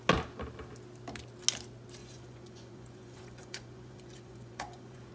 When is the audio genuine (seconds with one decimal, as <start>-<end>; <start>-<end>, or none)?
0.0-2.0